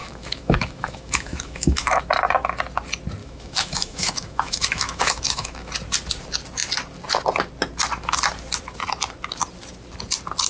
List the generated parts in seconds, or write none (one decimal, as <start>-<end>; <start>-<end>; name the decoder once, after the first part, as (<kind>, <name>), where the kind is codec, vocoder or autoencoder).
0.0-2.0 (autoencoder, DAC-VAE); 3.2-5.7

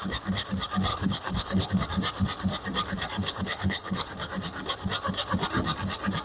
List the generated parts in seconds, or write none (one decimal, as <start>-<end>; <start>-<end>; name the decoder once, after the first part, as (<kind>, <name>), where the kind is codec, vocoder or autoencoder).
0.9-1.7 (codec, HILCodec); 3.2-4.3

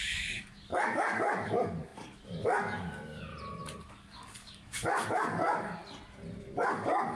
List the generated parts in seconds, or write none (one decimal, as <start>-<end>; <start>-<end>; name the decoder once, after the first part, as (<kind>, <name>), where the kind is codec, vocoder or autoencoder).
0.0-3.3 (codec, DAC); 3.9-5.8; 6.4-7.2

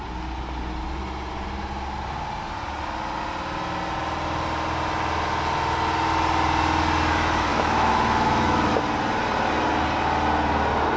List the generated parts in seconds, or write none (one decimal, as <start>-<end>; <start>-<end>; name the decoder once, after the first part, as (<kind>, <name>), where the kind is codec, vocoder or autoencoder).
7.5-8.7 (autoencoder, DAC-VAE)

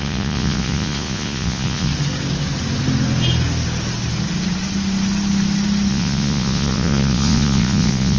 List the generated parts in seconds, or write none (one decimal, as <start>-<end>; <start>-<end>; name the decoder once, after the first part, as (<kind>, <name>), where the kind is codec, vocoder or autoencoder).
0.0-1.9 (vocoder, Vocos); 5.9-8.2

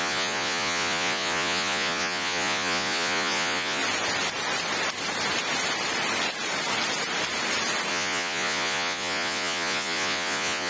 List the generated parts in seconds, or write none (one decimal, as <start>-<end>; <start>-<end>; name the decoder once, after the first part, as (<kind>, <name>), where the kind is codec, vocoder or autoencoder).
0.0-3.8 (vocoder, Vocos); 7.9-10.7

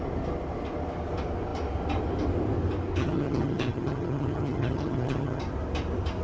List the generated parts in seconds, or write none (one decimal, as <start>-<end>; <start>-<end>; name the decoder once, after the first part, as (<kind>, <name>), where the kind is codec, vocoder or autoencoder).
3.0-5.4 (vocoder, HiFi-GAN)

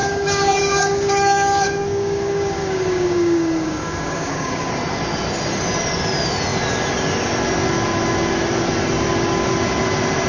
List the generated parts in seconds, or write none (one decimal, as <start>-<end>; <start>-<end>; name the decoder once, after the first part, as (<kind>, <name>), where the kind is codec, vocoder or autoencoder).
0.0-4.7 (codec, DAC)